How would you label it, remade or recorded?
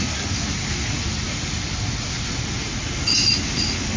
recorded